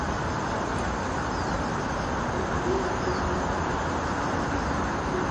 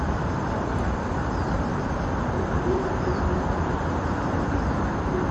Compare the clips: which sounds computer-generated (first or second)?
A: second